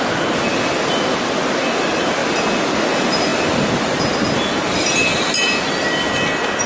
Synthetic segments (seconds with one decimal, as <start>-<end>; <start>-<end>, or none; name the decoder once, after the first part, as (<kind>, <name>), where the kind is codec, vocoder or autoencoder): none